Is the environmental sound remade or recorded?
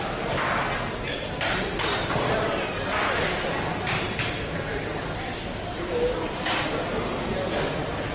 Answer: recorded